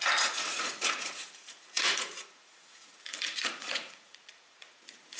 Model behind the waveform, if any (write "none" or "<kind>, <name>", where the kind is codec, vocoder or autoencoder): vocoder, Vocos